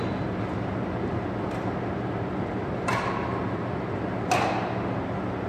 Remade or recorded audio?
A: recorded